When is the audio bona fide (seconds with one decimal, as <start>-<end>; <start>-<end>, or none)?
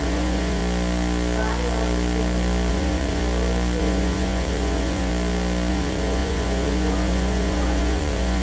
0.6-2.7; 3.2-3.8; 5.1-5.7